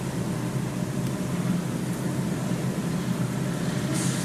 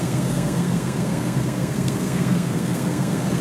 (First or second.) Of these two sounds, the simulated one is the second